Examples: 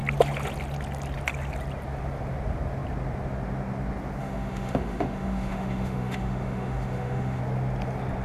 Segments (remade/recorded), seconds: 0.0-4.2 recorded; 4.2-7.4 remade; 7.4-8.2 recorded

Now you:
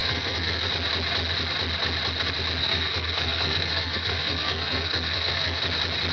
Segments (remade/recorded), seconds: 0.0-0.7 remade; 0.7-2.6 recorded; 2.6-5.6 remade; 5.6-6.1 recorded

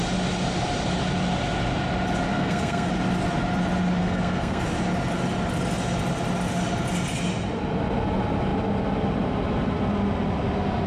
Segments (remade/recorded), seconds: 0.0-2.3 recorded; 2.3-2.9 remade; 2.9-4.0 recorded; 4.0-4.6 remade; 4.6-10.9 recorded

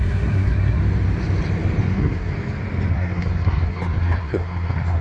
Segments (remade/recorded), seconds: 0.0-0.8 remade; 0.8-1.8 recorded; 1.8-2.3 remade; 2.3-2.9 recorded; 2.9-5.0 remade

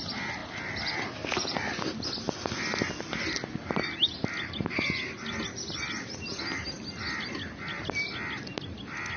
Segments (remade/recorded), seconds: 0.0-9.2 recorded

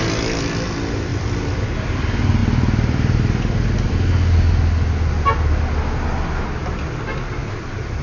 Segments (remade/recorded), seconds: 0.0-7.4 recorded; 7.4-8.0 remade

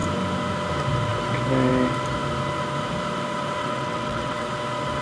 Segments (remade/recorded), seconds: 0.0-3.6 recorded; 3.6-4.5 remade; 4.5-5.0 recorded

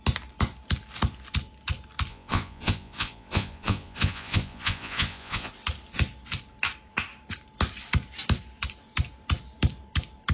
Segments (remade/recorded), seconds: 0.0-2.1 recorded; 2.1-5.5 remade; 5.5-10.3 recorded